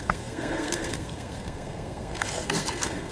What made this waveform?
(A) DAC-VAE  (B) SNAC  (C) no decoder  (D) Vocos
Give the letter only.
B